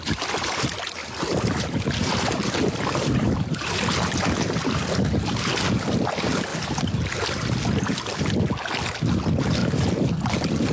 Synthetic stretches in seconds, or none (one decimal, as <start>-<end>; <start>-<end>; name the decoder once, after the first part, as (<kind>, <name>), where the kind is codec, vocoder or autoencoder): 1.0-4.1 (vocoder, BigVGAN v2)